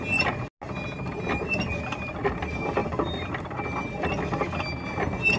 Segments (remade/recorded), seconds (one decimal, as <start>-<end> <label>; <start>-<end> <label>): 0.0-5.4 recorded